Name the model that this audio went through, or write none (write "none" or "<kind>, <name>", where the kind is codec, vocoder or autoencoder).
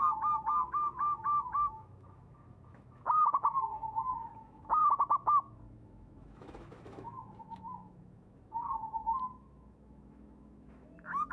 autoencoder, DAC-VAE